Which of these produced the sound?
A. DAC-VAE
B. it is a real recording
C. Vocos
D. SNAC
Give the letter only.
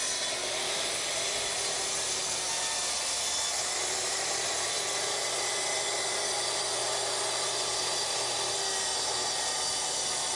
B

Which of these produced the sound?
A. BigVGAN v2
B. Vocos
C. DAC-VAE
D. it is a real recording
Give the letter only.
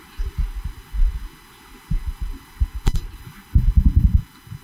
D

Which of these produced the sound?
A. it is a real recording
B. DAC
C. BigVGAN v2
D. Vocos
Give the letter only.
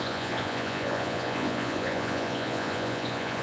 D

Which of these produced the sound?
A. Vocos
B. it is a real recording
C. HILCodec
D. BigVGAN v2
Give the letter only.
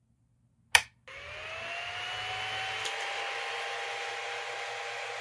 B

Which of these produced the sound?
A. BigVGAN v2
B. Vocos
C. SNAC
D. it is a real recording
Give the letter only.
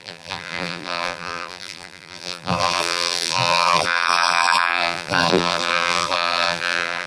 A